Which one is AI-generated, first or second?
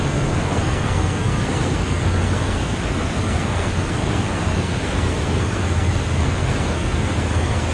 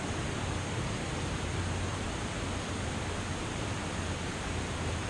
first